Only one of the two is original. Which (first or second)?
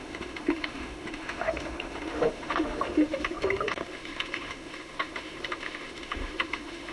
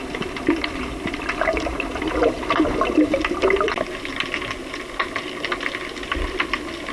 second